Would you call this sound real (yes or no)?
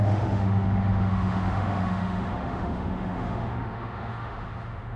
no